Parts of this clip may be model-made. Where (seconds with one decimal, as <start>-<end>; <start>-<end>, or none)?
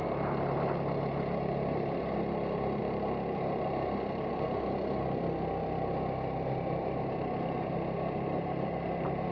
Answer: none